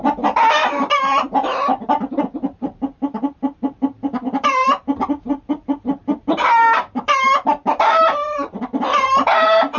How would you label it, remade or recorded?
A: remade